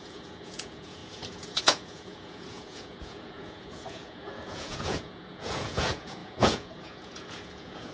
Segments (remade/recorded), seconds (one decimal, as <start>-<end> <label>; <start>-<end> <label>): 0.0-7.9 remade